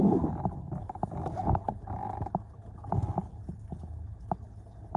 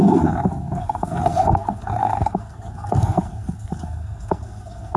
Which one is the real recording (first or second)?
first